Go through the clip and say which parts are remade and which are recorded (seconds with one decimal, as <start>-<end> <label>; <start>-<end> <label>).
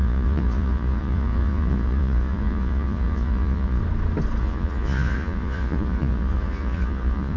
0.0-3.8 remade; 3.8-4.4 recorded; 4.4-7.4 remade